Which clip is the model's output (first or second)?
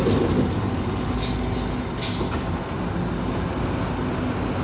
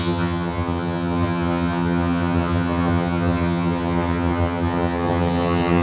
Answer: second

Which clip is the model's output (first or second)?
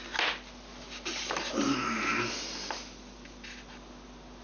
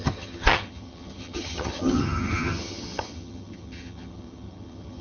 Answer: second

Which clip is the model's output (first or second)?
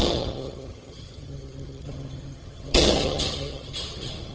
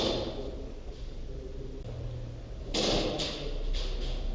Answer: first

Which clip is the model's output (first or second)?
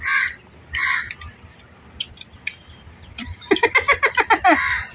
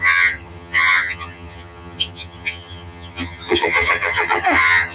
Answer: second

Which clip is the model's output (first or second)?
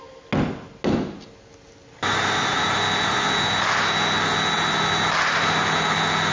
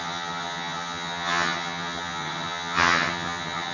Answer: second